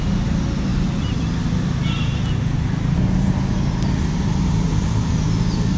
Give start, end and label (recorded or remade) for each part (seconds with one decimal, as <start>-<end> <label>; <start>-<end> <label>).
0.0-5.8 recorded